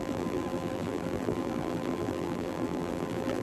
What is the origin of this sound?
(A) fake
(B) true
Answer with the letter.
A